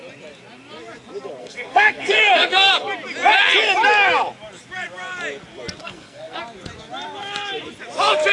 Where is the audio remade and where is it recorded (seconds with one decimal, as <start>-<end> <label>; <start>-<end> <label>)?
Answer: 0.0-1.4 recorded; 1.4-2.7 remade; 2.7-5.8 recorded; 5.8-6.4 remade; 6.4-8.3 recorded